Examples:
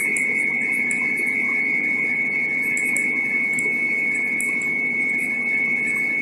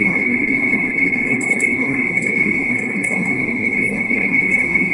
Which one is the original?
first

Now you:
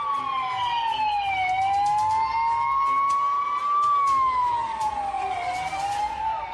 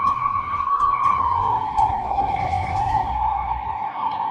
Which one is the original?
first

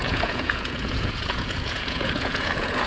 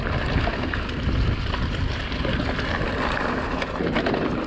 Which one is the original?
second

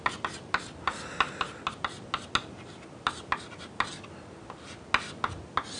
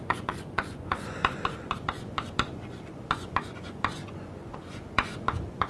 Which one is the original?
first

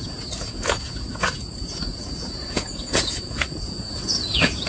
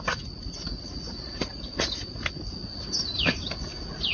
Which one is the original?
second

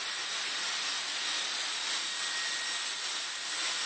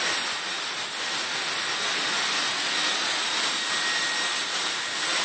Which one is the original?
second